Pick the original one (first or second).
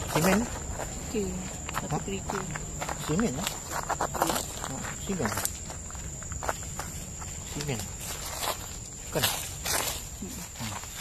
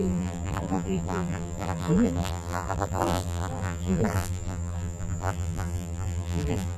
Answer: first